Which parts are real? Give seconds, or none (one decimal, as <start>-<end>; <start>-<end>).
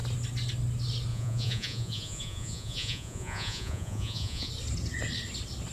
0.0-1.1; 4.5-5.7